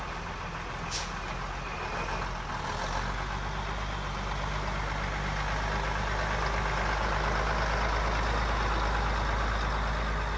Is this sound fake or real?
real